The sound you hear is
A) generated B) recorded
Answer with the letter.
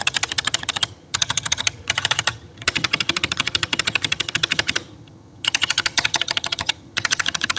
A